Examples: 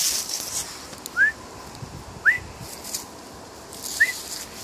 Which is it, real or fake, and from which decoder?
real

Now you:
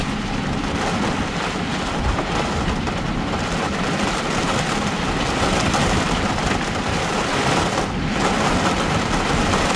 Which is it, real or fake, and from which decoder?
real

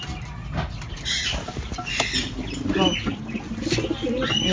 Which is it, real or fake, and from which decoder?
real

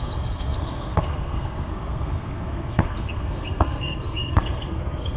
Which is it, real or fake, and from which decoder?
fake, codec, SNAC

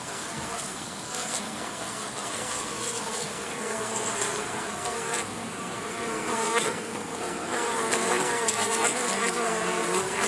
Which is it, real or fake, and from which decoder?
fake, codec, SNAC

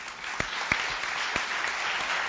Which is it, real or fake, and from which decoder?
real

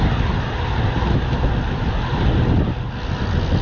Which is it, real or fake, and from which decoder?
real